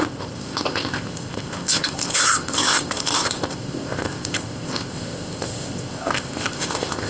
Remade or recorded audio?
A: remade